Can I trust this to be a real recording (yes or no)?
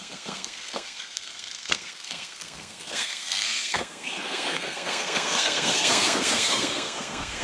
no